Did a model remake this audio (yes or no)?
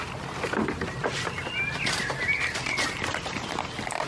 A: no